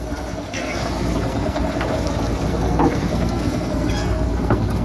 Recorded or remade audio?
remade